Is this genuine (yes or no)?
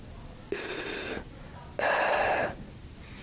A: yes